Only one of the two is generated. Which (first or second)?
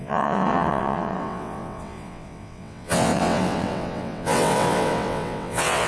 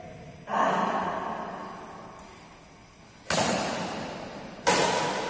first